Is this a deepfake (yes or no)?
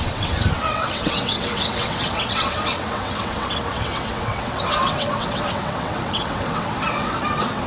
yes